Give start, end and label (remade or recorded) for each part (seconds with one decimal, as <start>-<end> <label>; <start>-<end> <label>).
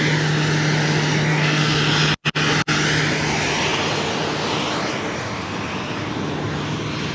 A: 0.0-1.3 recorded; 1.3-1.8 remade; 1.8-7.1 recorded